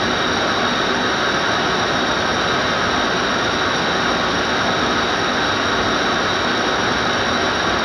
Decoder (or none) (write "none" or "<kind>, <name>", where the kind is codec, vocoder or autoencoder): none